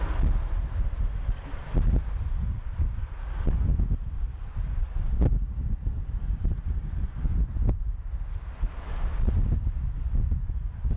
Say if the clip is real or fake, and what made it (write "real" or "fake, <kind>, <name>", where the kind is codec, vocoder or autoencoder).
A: real